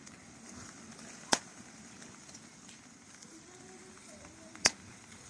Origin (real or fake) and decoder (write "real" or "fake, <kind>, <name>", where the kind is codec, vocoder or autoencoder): real